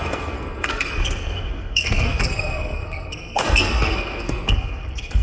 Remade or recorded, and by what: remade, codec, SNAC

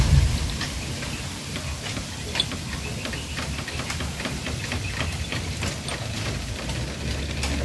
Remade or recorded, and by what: recorded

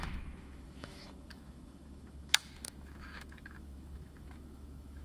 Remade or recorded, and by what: remade, autoencoder, DAC-VAE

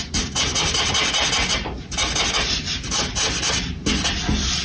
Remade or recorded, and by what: recorded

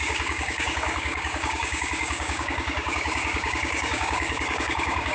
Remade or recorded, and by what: remade, codec, DAC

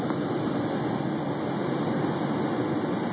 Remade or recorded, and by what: recorded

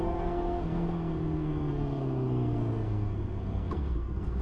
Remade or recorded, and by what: remade, codec, SNAC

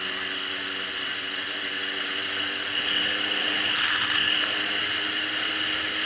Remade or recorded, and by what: recorded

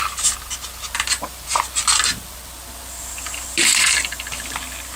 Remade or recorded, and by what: recorded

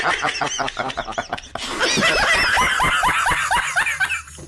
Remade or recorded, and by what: recorded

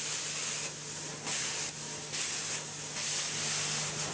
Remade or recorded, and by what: recorded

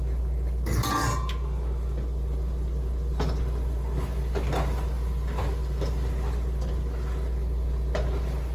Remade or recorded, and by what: recorded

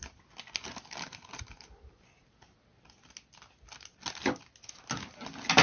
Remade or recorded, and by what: recorded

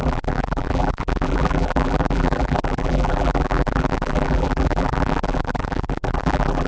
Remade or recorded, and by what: remade, vocoder, BigVGAN v2